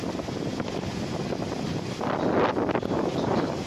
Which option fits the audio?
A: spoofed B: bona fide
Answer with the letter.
B